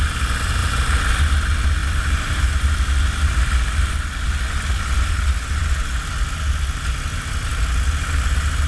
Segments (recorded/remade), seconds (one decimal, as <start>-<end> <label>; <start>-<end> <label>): 0.0-8.7 recorded